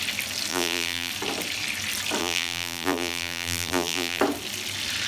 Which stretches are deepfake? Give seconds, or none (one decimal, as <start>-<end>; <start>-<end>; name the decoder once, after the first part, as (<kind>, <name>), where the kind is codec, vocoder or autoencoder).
0.5-1.1 (vocoder, BigVGAN v2); 2.2-4.2